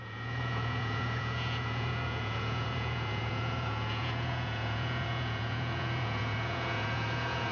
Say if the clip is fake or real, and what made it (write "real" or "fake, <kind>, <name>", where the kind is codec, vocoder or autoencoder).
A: fake, vocoder, Vocos